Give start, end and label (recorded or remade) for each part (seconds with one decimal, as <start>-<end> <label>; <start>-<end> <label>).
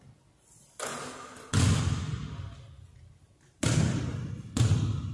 0.0-5.1 recorded